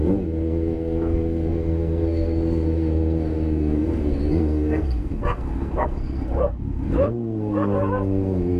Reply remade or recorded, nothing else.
remade